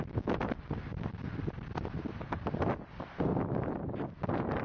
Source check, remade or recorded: recorded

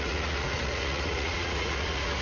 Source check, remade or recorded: remade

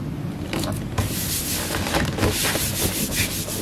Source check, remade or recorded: recorded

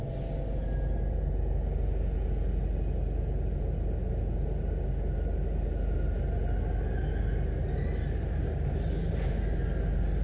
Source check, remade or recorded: recorded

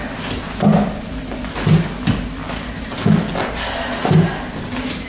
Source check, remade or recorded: recorded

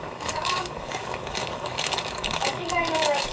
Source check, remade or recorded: remade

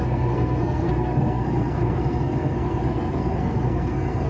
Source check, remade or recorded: remade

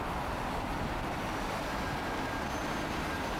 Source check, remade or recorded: recorded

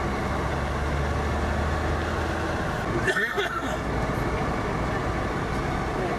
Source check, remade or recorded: recorded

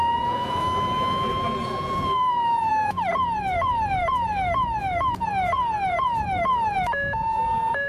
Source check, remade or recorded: remade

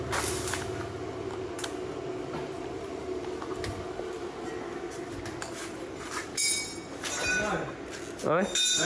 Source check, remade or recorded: recorded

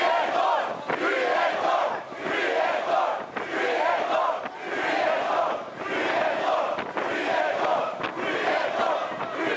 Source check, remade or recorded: recorded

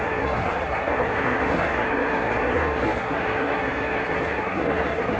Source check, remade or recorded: remade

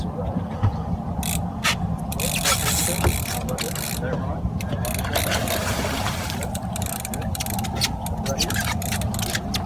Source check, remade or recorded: recorded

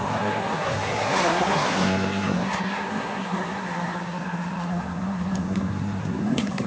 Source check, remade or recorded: remade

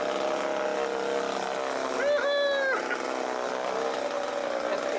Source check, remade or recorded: recorded